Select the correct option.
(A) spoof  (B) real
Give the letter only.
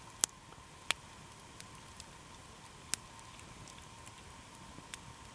B